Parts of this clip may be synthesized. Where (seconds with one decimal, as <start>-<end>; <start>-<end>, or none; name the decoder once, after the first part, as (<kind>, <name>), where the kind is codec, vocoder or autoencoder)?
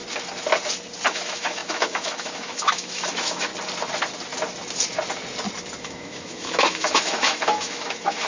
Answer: 1.1-3.5 (autoencoder, DAC-VAE); 5.8-8.3